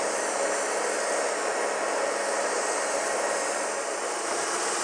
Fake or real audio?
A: real